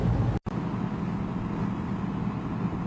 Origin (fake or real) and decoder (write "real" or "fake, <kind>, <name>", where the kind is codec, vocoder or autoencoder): real